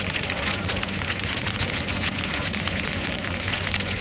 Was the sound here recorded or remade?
remade